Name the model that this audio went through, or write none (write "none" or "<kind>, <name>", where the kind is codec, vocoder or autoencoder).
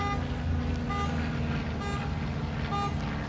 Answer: none